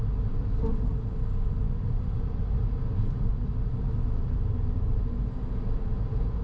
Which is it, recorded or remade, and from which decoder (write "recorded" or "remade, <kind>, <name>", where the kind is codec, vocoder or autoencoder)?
recorded